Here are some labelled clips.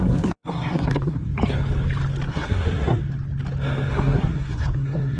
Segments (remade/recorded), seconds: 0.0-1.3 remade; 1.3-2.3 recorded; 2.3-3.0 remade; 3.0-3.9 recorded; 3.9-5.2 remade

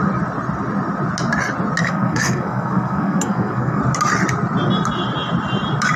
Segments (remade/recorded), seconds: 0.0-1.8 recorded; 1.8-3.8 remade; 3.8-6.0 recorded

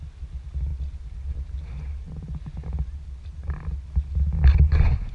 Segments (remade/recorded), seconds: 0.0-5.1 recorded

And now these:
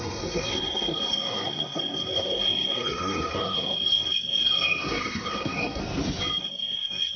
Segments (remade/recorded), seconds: 0.0-5.8 remade; 5.8-6.4 recorded; 6.4-7.2 remade

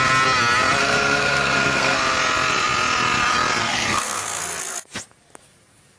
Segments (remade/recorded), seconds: 0.0-0.8 recorded; 0.8-2.0 remade; 2.0-3.6 recorded; 3.6-4.4 remade; 4.4-6.0 recorded

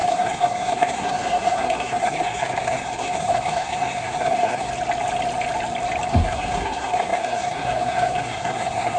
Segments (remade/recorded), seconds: 0.0-4.7 remade; 4.7-6.1 recorded; 6.1-9.0 remade